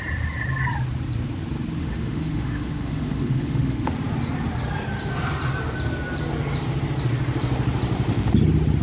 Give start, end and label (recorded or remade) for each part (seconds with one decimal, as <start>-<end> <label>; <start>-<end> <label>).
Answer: 0.0-1.8 recorded; 1.8-3.9 remade; 3.9-8.8 recorded